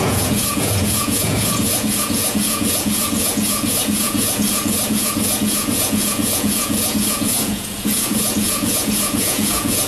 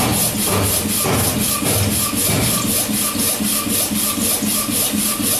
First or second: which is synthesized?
first